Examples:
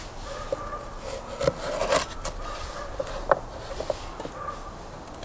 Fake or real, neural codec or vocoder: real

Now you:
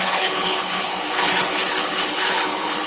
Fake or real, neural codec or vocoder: fake, codec, HILCodec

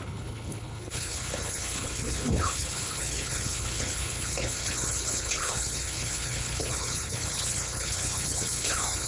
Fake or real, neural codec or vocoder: fake, codec, HILCodec